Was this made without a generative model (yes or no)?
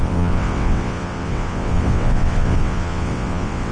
no